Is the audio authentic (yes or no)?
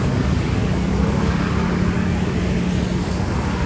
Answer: no